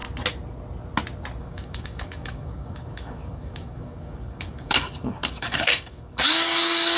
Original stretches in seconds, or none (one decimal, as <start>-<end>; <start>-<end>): 0.0-1.4